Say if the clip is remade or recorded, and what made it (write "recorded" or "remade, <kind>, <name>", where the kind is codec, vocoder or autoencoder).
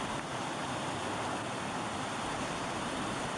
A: recorded